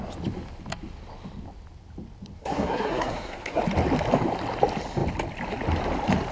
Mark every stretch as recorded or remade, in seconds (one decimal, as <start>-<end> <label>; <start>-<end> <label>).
0.0-2.4 recorded; 2.4-3.6 remade; 3.6-6.3 recorded